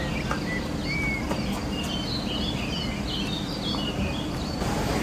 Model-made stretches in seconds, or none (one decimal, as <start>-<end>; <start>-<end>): none